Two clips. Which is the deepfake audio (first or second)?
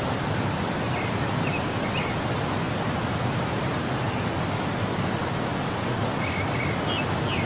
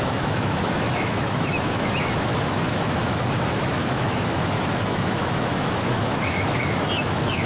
second